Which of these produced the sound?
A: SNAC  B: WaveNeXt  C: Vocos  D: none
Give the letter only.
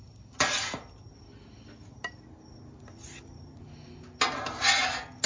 D